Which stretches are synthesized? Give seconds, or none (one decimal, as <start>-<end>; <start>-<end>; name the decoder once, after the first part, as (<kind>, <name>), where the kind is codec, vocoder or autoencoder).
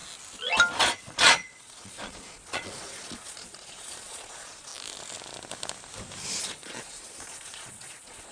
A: 1.0-4.7 (vocoder, Vocos); 6.4-8.3